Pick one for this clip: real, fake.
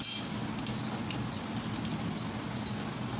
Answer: real